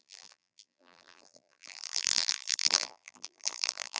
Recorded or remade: remade